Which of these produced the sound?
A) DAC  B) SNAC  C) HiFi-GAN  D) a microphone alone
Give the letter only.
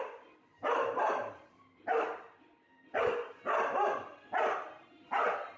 D